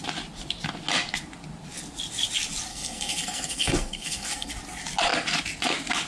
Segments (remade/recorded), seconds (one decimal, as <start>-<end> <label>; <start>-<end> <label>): 0.0-2.7 recorded; 2.7-4.5 remade; 4.5-6.1 recorded